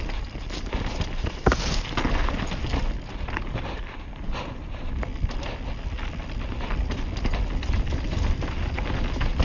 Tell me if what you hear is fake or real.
real